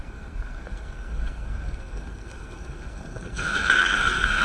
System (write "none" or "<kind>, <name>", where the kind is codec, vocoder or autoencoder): codec, SNAC